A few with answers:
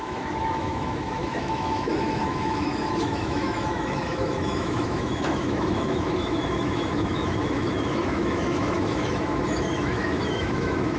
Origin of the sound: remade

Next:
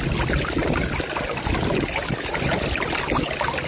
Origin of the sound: recorded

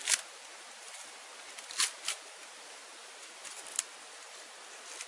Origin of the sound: recorded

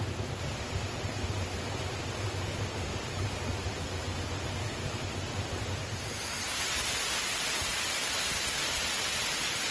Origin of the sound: recorded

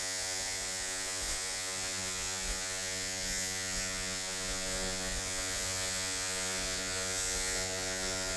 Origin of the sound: remade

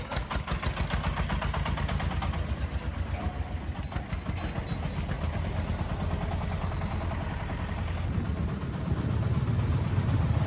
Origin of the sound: recorded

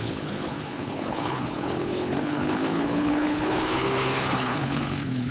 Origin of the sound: remade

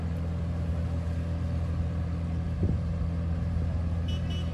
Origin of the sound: recorded